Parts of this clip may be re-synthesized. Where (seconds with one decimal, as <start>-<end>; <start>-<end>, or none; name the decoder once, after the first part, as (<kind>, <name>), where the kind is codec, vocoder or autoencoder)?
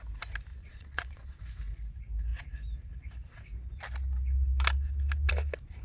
0.5-1.4 (vocoder, Vocos)